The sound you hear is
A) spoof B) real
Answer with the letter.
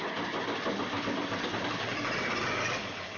B